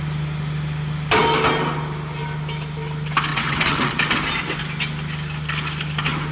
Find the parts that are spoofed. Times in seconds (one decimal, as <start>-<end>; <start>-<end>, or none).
3.3-3.9